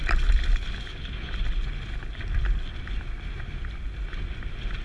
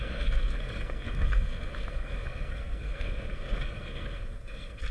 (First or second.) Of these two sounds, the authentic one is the first